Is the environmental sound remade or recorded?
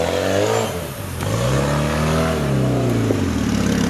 recorded